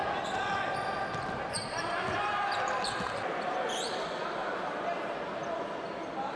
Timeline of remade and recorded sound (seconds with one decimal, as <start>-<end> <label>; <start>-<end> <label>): 0.0-6.4 recorded